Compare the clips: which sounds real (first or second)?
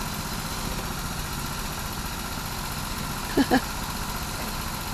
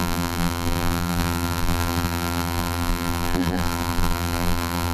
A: first